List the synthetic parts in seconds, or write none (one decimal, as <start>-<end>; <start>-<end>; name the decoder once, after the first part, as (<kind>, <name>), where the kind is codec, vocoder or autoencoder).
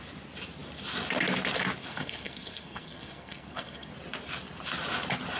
1.8-3.9 (codec, SNAC)